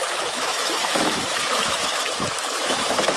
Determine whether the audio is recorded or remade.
remade